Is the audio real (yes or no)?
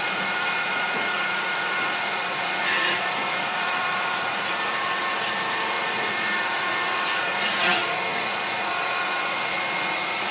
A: no